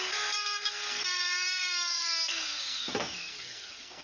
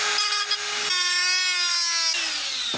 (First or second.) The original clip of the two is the second